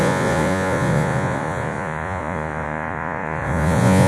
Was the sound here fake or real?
fake